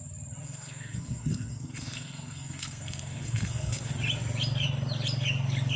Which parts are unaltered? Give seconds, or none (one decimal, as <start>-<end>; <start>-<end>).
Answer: 0.0-0.4; 3.9-5.8